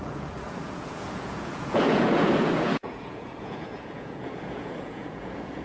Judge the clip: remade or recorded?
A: remade